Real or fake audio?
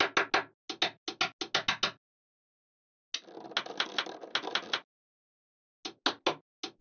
real